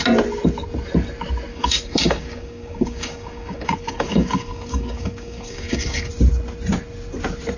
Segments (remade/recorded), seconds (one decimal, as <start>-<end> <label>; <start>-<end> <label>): 0.0-1.5 recorded; 1.5-6.1 remade; 6.1-7.6 recorded

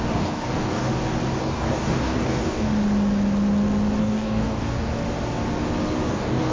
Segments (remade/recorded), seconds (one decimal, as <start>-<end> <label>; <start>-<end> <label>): 0.0-0.9 remade; 0.9-1.4 recorded; 1.4-2.7 remade; 2.7-4.0 recorded; 4.0-4.9 remade; 4.9-6.1 recorded; 6.1-6.5 remade